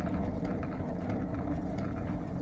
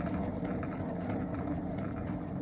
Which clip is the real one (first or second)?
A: second